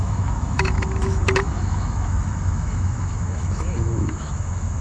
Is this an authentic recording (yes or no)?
no